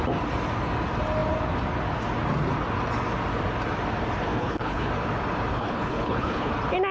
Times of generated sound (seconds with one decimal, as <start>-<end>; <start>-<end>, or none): 4.3-4.9; 5.5-6.5

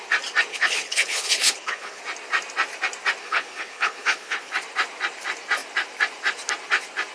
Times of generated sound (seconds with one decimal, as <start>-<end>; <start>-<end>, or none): 0.5-2.0; 3.2-4.5

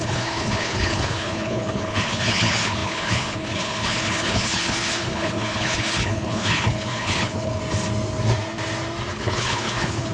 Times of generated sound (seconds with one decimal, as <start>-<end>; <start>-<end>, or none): 0.0-7.6; 9.1-10.1

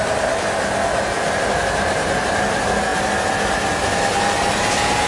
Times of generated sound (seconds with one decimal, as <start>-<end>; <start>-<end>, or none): none

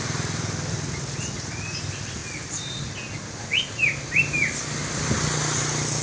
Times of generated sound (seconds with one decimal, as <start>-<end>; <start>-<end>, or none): none

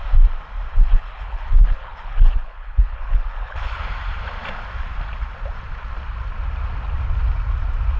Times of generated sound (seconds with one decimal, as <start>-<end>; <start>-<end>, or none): 0.7-3.8

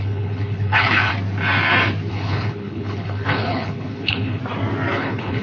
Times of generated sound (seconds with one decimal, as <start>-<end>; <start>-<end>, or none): 0.0-1.1; 2.1-4.4; 4.9-5.4

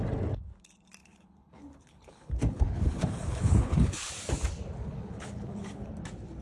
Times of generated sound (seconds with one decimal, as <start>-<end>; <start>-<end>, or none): 1.0-4.1; 4.8-5.9